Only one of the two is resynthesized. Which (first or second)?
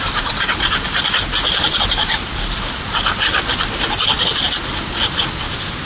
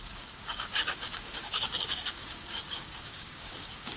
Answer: second